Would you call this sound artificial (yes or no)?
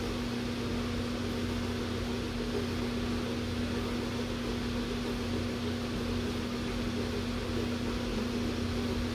no